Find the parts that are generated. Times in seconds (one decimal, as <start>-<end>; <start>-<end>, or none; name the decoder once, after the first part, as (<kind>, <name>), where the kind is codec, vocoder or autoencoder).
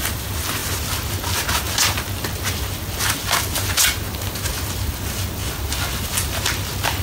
none